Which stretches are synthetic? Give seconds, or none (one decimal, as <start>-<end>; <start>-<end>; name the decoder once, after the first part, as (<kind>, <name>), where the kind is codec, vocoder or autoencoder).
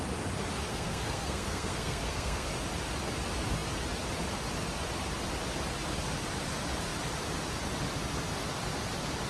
0.7-2.5 (codec, SNAC)